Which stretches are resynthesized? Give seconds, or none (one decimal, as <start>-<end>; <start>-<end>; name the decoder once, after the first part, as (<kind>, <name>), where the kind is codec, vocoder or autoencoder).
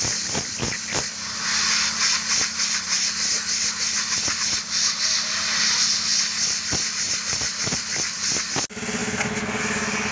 none